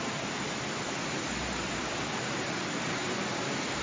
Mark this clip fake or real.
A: fake